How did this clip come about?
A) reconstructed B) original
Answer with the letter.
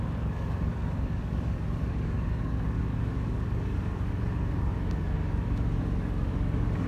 A